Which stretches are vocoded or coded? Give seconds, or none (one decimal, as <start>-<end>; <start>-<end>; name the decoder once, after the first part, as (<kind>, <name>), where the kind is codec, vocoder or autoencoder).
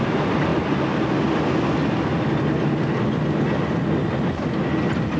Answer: none